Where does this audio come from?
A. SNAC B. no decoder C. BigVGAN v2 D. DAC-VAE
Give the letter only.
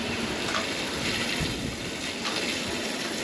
C